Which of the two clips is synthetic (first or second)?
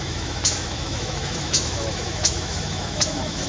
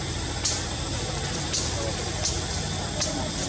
first